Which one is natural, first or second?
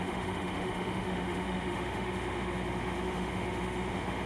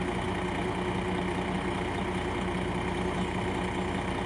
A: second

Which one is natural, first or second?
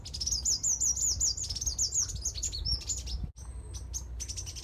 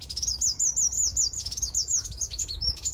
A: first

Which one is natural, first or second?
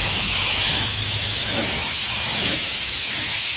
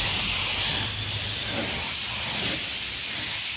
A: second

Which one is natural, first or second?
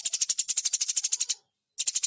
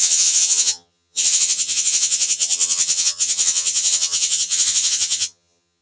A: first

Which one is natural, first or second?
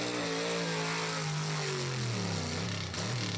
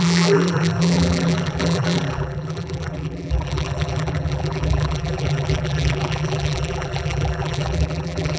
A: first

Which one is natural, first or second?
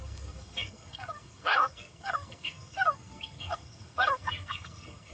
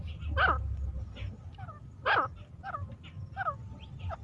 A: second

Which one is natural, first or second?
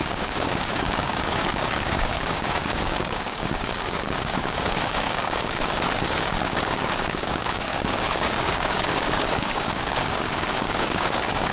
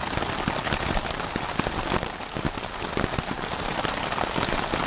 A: second